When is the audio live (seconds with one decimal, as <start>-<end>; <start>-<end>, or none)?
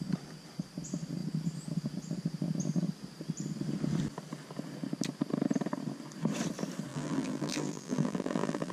0.0-6.9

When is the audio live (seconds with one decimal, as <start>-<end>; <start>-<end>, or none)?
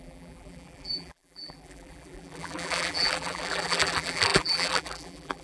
none